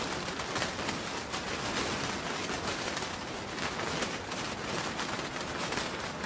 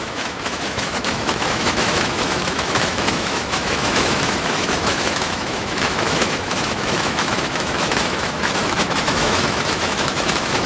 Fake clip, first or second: second